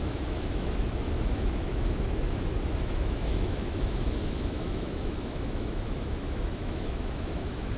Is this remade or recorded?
remade